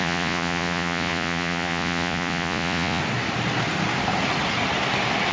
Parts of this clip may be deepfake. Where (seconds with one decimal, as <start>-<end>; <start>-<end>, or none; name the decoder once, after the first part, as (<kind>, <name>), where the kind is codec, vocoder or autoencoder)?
0.0-3.0 (vocoder, Vocos)